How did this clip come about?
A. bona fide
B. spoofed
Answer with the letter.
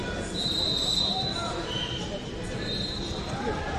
B